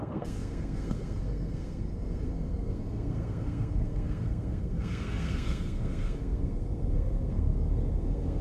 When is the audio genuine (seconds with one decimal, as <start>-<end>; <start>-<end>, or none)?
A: none